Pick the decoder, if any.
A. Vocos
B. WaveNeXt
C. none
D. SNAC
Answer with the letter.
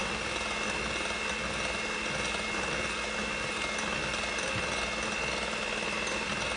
C